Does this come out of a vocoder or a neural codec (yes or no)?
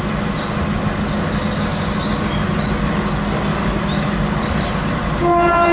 no